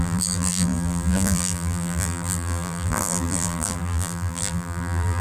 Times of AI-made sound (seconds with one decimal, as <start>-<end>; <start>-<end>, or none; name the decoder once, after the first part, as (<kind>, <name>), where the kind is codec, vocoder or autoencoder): 0.0-5.2 (vocoder, BigVGAN v2)

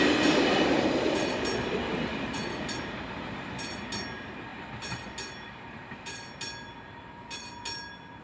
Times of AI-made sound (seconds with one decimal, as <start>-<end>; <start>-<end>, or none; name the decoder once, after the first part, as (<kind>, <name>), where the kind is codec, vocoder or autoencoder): 4.5-8.2 (vocoder, BigVGAN v2)

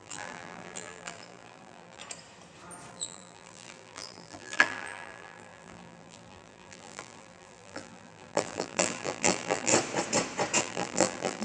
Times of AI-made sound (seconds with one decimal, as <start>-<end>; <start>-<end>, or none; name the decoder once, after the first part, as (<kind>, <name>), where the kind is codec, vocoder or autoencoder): 0.0-2.0 (vocoder, BigVGAN v2); 2.9-9.7; 10.6-11.4